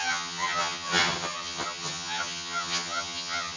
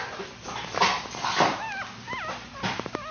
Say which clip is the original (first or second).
second